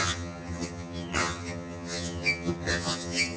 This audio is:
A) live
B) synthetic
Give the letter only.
B